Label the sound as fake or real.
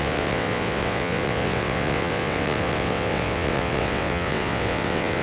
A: fake